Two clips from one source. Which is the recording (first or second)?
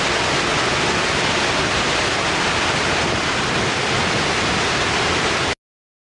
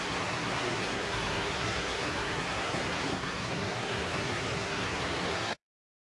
first